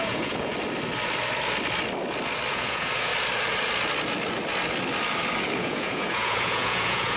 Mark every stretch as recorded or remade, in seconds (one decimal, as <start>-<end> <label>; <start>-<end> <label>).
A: 0.0-0.5 remade; 0.5-2.5 recorded; 2.5-3.1 remade; 3.1-5.6 recorded; 5.6-7.2 remade